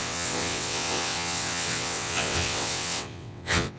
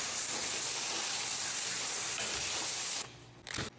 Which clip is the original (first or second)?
second